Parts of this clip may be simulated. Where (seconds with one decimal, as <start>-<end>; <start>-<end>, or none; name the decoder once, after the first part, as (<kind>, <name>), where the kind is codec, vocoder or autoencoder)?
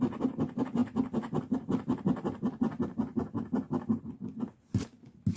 none